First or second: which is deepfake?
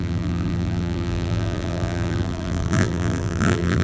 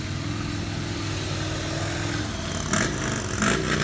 first